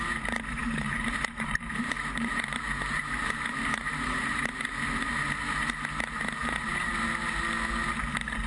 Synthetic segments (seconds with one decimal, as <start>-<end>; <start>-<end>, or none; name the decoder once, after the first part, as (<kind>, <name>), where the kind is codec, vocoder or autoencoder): 0.6-5.2 (vocoder, BigVGAN v2); 6.4-6.9